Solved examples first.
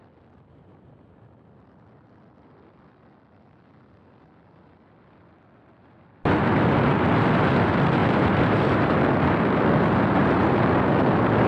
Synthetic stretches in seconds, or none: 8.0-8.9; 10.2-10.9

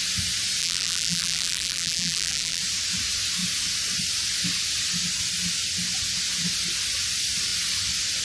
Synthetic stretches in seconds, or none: 0.6-2.6

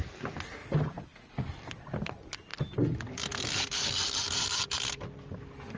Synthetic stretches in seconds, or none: 0.6-1.8; 2.5-5.8

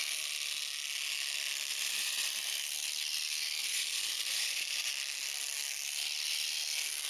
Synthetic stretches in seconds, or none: 1.7-2.6; 3.6-4.9

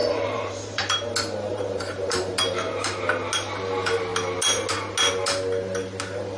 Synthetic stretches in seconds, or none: 0.0-0.8; 1.5-2.3

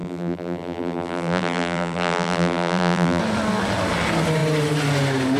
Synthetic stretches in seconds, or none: 0.0-3.2

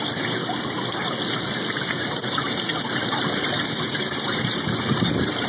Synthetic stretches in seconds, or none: 0.0-5.5

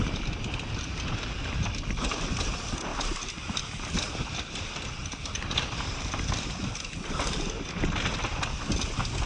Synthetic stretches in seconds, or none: 0.0-9.3